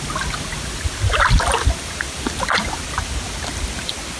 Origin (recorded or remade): recorded